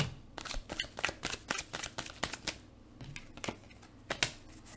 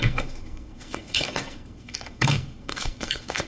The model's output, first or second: second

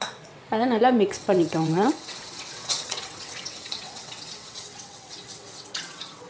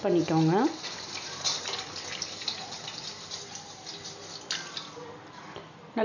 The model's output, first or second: first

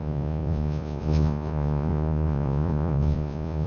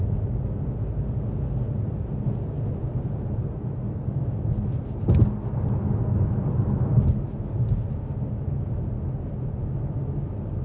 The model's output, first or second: first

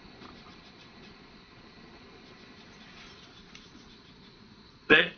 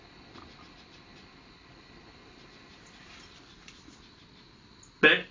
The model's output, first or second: first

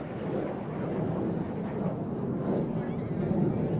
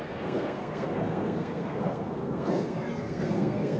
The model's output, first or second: second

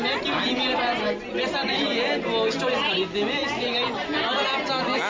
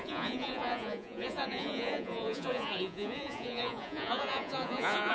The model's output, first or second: second